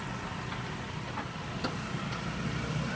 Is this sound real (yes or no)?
yes